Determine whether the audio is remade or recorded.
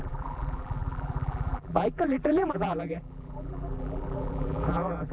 remade